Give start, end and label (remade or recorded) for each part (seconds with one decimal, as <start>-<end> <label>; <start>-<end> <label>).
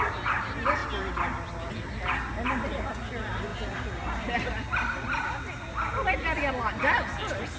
0.0-7.6 recorded